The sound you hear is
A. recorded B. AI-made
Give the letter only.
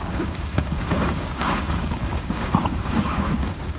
B